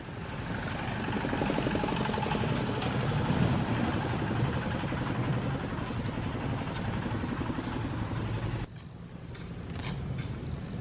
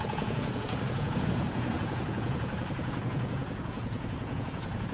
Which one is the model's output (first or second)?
second